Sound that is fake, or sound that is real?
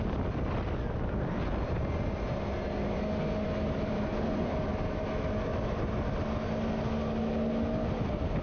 real